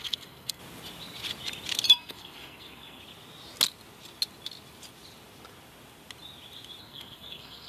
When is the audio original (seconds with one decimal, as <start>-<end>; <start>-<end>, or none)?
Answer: 0.6-1.9; 3.0-6.8